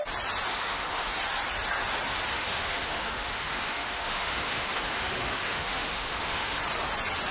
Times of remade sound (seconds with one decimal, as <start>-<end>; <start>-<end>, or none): 0.5-1.1; 2.3-6.6